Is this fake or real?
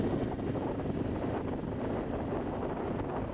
real